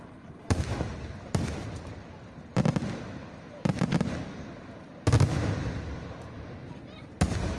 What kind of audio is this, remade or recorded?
recorded